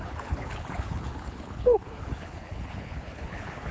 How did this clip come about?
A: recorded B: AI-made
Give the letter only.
B